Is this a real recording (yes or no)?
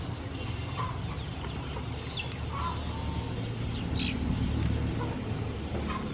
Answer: yes